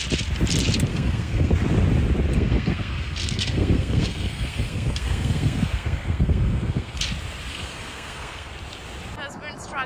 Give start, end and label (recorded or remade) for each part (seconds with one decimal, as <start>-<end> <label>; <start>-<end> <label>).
0.0-0.9 recorded; 0.9-1.5 remade; 1.5-2.3 recorded; 2.3-7.0 remade; 7.0-7.5 recorded; 7.5-8.5 remade; 8.5-9.9 recorded